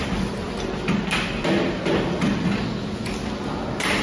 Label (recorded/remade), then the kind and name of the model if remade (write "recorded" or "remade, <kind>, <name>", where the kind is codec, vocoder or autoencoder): recorded